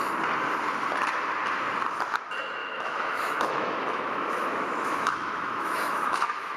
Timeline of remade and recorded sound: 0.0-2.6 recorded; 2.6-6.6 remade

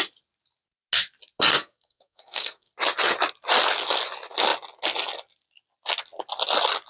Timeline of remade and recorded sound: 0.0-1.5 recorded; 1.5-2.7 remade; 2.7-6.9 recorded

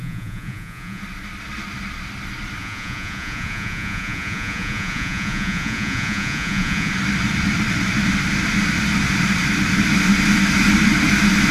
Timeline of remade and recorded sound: 0.0-1.0 remade; 1.0-2.6 recorded; 2.6-6.9 remade; 6.9-11.5 recorded

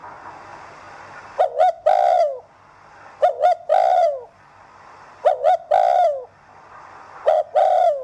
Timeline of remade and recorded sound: 0.0-8.0 recorded